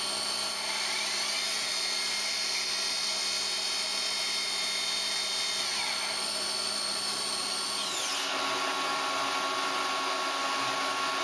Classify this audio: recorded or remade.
recorded